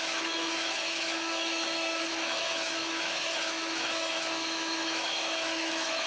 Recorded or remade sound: remade